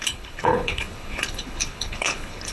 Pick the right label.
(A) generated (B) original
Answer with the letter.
A